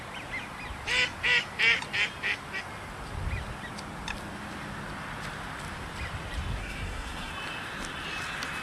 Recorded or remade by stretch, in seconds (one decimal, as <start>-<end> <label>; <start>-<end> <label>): 0.0-6.6 recorded; 6.6-7.3 remade; 7.3-8.6 recorded